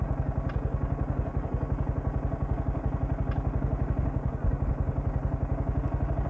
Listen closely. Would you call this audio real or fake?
real